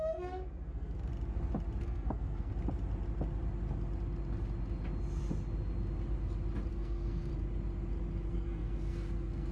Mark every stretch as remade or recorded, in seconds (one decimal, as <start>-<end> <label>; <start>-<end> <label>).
0.0-1.1 remade; 1.1-1.8 recorded; 1.8-2.5 remade; 2.5-6.7 recorded; 6.7-7.3 remade; 7.3-8.3 recorded; 8.3-9.5 remade